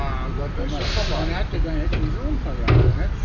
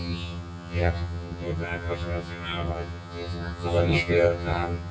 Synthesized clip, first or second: second